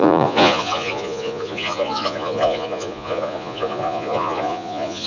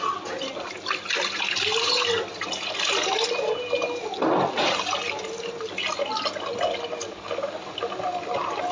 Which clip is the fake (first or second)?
first